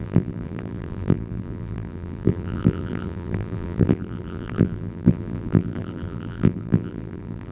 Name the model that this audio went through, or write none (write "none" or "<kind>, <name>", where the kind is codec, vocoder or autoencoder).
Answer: vocoder, BigVGAN v2